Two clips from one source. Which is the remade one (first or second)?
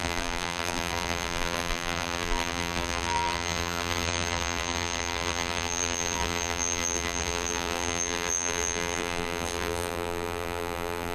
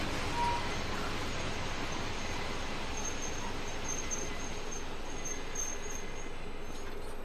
first